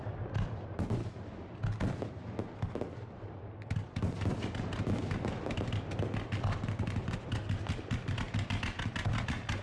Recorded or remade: recorded